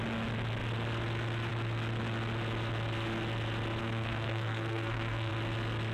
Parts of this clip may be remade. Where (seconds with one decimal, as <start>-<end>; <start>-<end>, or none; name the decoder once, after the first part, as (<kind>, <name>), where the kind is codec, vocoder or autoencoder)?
3.8-5.3 (codec, SNAC)